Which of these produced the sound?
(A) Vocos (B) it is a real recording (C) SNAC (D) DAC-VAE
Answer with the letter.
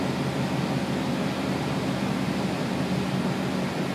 B